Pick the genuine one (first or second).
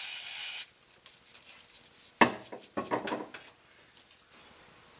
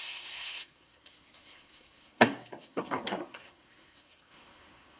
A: first